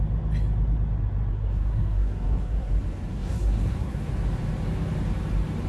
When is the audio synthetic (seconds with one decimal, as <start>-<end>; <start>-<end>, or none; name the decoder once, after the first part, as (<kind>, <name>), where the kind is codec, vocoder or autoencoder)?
1.3-2.7 (codec, SNAC); 3.1-4.1